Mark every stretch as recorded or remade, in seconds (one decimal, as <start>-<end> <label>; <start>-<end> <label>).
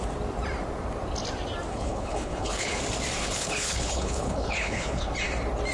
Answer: 0.0-1.7 recorded; 1.7-2.8 remade; 2.8-3.2 recorded; 3.2-5.1 remade; 5.1-5.7 recorded